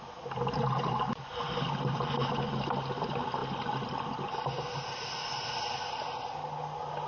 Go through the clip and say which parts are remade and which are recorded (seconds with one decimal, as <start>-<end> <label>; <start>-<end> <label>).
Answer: 0.0-7.1 recorded